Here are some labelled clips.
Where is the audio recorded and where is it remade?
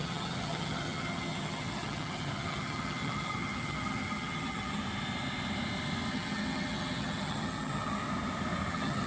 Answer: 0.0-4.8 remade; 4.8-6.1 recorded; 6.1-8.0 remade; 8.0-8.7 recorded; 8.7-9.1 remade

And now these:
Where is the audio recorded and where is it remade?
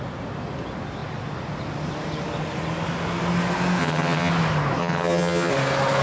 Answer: 0.0-3.8 recorded; 3.8-4.3 remade; 4.3-4.8 recorded; 4.8-5.5 remade; 5.5-6.0 recorded